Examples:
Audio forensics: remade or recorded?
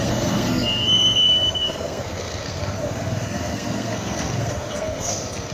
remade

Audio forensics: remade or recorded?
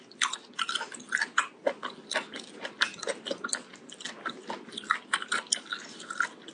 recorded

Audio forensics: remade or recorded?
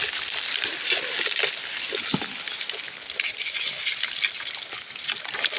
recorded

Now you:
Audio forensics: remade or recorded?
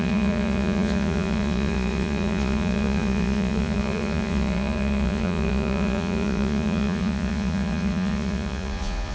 remade